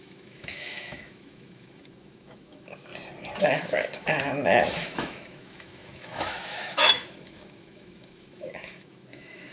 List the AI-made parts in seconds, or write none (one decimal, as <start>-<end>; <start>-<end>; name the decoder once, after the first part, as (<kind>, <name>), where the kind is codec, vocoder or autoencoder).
0.0-2.9 (autoencoder, DAC-VAE); 3.4-9.5